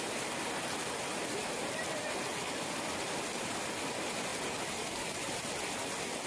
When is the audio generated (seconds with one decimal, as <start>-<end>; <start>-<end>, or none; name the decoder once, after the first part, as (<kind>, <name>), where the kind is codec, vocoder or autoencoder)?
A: none